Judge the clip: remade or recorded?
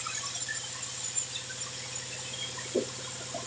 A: recorded